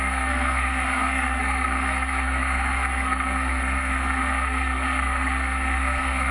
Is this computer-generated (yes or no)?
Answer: yes